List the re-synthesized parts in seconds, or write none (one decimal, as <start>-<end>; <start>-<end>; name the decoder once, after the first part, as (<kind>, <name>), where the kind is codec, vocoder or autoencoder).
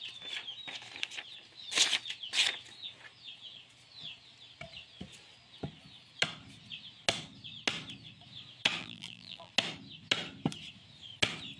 8.8-9.5 (vocoder, BigVGAN v2)